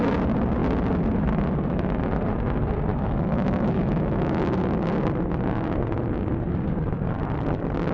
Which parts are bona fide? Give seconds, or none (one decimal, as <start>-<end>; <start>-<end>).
0.0-2.9; 4.4-7.9